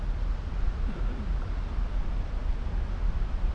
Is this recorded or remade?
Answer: recorded